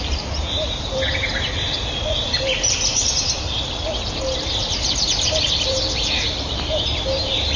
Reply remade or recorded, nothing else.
remade